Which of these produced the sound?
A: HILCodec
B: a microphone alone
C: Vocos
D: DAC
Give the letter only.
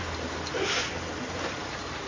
B